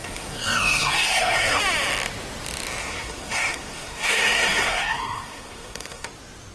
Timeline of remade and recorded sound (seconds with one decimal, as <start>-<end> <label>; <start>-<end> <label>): 0.0-1.6 remade; 1.6-2.8 recorded; 2.8-6.1 remade; 6.1-6.5 recorded